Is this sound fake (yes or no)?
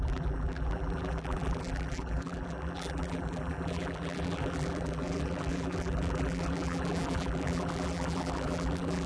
yes